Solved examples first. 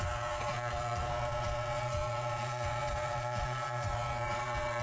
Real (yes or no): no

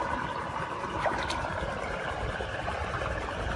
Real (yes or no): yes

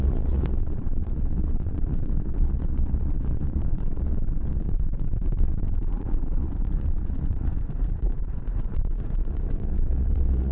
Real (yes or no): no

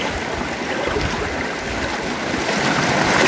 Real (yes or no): yes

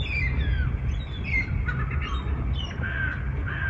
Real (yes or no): yes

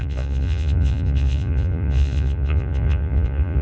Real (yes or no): no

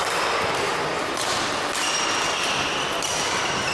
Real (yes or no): yes